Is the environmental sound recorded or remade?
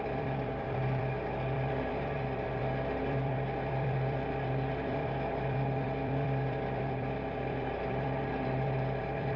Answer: remade